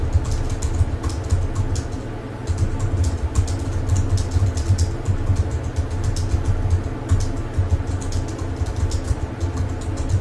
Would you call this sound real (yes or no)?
yes